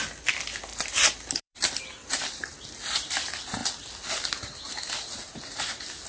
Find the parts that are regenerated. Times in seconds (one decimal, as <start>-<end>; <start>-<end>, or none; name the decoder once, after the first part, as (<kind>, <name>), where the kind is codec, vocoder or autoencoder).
0.7-2.5 (vocoder, BigVGAN v2)